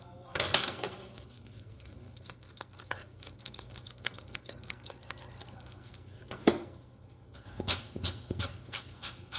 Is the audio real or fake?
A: fake